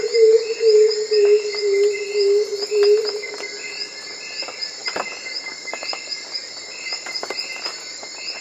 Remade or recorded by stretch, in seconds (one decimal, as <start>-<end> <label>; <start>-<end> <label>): 0.0-8.4 recorded